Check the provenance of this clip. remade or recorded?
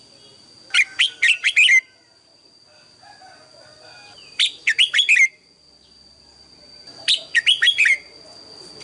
recorded